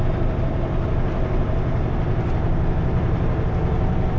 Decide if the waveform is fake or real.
real